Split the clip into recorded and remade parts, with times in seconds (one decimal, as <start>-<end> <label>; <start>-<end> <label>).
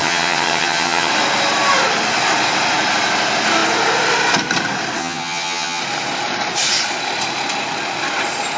0.0-1.1 remade; 1.1-5.0 recorded; 5.0-5.8 remade; 5.8-8.6 recorded